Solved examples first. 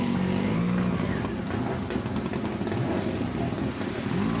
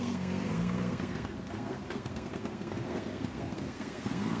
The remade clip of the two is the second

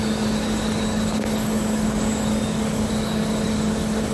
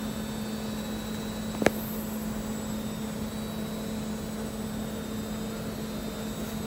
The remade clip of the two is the first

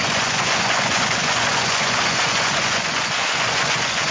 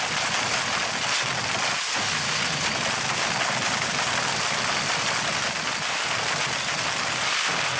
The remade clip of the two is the first